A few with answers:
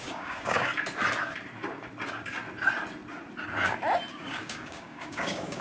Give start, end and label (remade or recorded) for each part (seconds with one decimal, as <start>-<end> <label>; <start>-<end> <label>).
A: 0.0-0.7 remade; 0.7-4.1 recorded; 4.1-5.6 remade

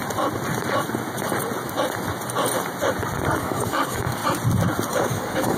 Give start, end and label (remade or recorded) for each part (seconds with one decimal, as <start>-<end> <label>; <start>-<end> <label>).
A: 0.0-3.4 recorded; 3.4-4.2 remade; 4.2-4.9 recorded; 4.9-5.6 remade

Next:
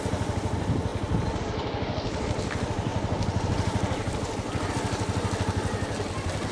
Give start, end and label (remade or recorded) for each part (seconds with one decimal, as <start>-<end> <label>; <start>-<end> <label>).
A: 0.0-0.9 remade; 0.9-1.4 recorded; 1.4-2.9 remade; 2.9-4.7 recorded; 4.7-6.5 remade